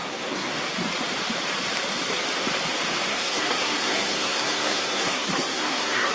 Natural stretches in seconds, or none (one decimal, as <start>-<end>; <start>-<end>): 0.5-3.1